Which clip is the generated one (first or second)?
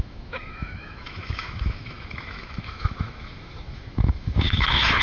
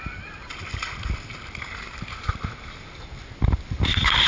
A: first